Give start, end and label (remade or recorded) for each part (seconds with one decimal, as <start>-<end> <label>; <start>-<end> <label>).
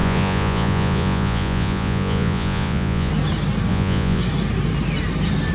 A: 0.0-3.1 remade; 3.1-3.7 recorded; 3.7-4.2 remade; 4.2-5.5 recorded